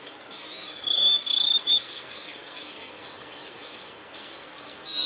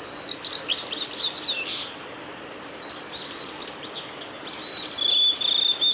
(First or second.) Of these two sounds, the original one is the second